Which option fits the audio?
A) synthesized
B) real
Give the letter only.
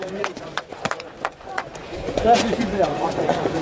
A